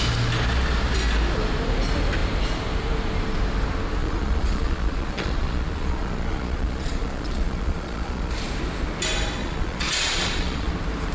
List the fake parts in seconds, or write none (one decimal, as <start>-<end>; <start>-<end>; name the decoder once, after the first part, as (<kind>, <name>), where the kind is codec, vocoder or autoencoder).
4.0-8.3 (vocoder, Vocos); 9.4-10.7